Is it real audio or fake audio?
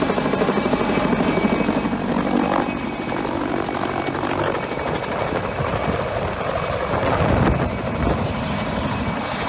real